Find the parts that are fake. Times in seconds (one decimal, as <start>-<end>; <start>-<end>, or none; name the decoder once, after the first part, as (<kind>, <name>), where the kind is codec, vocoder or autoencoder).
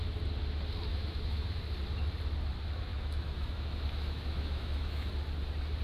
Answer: 0.9-1.6 (autoencoder, DAC-VAE); 2.9-5.1